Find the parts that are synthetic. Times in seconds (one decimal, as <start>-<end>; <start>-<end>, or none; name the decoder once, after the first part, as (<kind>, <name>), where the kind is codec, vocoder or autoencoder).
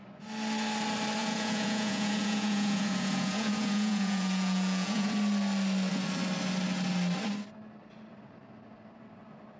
1.2-5.1 (vocoder, Vocos)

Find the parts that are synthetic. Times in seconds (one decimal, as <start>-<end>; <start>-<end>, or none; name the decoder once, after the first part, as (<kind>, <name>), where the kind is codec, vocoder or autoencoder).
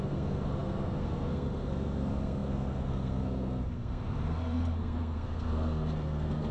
0.0-6.5 (codec, SNAC)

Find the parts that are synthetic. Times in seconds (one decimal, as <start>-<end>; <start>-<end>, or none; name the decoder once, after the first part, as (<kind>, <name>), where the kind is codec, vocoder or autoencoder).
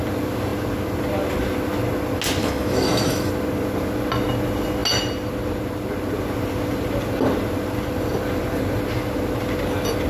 2.4-3.3 (autoencoder, DAC-VAE)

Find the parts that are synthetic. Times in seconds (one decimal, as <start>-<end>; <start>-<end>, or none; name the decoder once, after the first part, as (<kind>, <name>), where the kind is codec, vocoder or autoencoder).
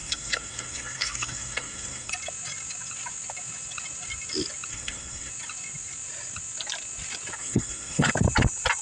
0.0-2.1 (codec, SNAC); 4.7-5.3; 7.4-8.1